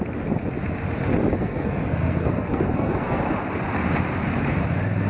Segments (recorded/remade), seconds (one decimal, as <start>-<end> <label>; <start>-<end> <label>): 0.0-1.3 recorded; 1.3-3.2 remade; 3.2-5.1 recorded

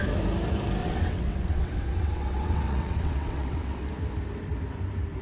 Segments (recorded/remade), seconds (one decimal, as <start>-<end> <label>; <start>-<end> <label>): 0.0-0.8 recorded; 0.8-3.9 remade; 3.9-5.2 recorded

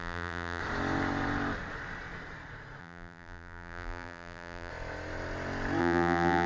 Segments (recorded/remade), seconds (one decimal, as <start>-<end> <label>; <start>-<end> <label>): 0.0-0.6 remade; 0.6-2.8 recorded; 2.8-4.7 remade; 4.7-5.8 recorded; 5.8-6.5 remade

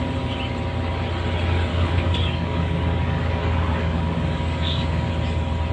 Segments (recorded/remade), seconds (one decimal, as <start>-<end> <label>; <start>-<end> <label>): 0.0-1.7 recorded; 1.7-5.1 remade; 5.1-5.7 recorded

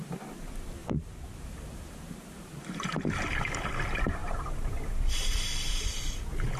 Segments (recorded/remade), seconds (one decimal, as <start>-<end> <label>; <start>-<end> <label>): 0.0-0.8 recorded; 0.8-2.5 remade; 2.5-4.2 recorded; 4.2-4.7 remade; 4.7-6.6 recorded

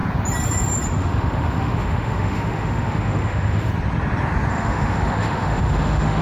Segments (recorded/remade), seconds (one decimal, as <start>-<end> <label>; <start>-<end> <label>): 0.0-1.0 recorded; 1.0-3.7 remade; 3.7-4.5 recorded; 4.5-6.2 remade

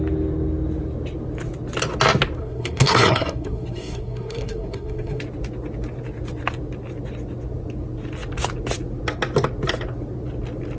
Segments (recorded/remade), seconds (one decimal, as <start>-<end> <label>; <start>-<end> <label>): 0.0-2.4 recorded; 2.4-5.2 remade; 5.2-10.8 recorded